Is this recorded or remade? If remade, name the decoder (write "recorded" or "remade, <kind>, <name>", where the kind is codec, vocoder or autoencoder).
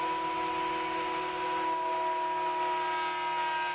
recorded